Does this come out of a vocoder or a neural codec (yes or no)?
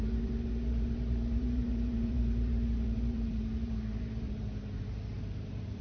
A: yes